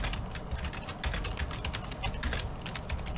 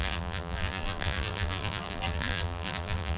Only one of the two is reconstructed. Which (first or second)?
second